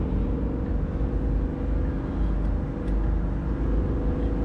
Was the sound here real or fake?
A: real